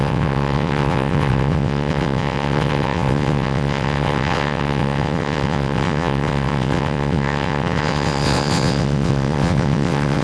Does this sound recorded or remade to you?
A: remade